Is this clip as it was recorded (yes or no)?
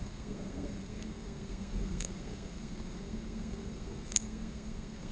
no